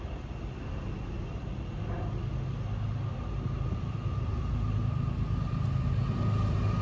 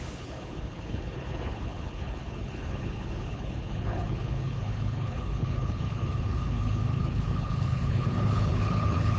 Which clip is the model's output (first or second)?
second